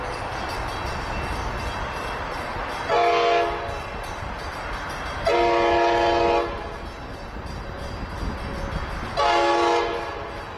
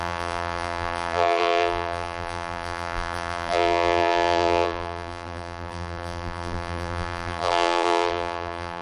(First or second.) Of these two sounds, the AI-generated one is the second